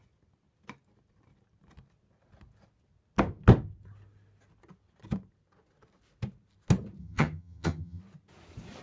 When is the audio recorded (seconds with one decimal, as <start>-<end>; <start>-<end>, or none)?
0.0-7.0; 8.0-8.8